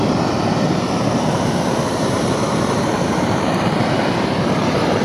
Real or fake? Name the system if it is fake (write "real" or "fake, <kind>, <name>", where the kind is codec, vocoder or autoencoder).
fake, vocoder, BigVGAN v2